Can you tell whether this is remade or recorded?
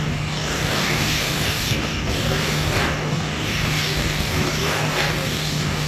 remade